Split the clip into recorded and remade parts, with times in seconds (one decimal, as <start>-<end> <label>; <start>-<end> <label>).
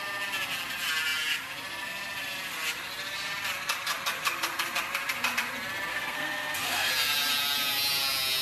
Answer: 0.0-5.9 recorded; 5.9-6.9 remade; 6.9-8.4 recorded